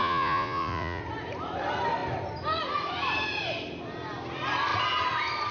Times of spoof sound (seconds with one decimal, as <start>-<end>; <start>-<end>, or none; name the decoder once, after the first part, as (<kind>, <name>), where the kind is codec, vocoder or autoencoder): 0.0-1.0 (vocoder, Vocos)